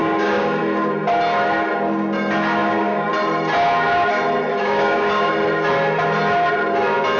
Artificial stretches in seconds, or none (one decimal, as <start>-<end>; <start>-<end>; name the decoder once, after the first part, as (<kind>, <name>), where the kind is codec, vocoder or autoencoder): 0.0-0.6 (codec, DAC); 2.6-3.1; 4.5-5.3